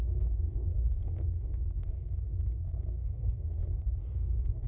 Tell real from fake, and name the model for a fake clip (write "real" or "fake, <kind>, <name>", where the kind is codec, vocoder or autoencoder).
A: fake, codec, SNAC